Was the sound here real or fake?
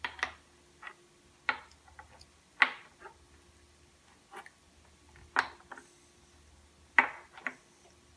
real